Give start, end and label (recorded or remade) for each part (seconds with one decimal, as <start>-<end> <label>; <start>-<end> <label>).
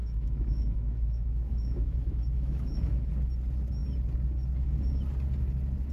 0.0-3.1 remade; 3.1-5.9 recorded